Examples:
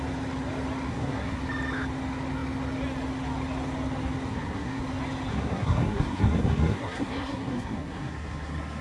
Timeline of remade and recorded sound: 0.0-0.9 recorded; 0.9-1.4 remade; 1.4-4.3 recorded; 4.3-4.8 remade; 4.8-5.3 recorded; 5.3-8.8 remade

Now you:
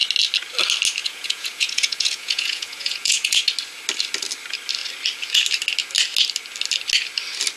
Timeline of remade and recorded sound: 0.0-1.0 recorded; 1.0-3.4 remade; 3.4-7.6 recorded

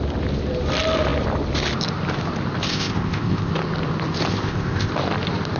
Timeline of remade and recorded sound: 0.0-2.7 recorded; 2.7-3.5 remade; 3.5-4.3 recorded; 4.3-4.9 remade; 4.9-5.6 recorded

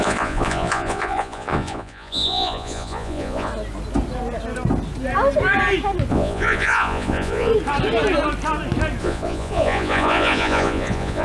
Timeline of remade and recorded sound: 0.0-3.5 remade; 3.5-6.1 recorded; 6.1-7.5 remade; 7.5-9.0 recorded; 9.0-11.2 remade

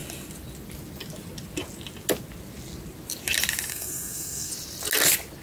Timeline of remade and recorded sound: 0.0-3.7 recorded; 3.7-4.5 remade; 4.5-5.4 recorded